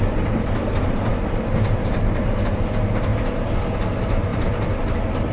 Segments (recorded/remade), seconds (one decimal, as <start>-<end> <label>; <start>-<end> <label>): 0.0-5.3 recorded